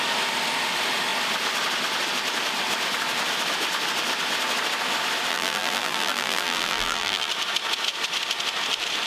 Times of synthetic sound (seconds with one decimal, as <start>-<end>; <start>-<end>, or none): 5.3-7.3